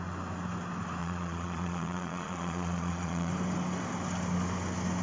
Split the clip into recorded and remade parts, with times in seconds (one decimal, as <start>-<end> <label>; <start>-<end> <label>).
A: 0.0-1.0 recorded; 1.0-3.3 remade; 3.3-5.0 recorded